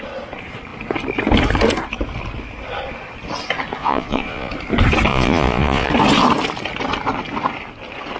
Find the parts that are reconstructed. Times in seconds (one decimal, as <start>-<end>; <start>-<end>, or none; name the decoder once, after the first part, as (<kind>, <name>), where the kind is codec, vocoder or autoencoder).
3.8-4.5 (vocoder, Vocos); 5.1-5.9